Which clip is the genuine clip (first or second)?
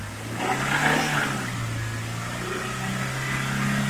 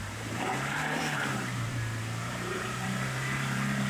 first